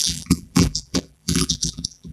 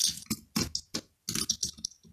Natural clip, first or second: second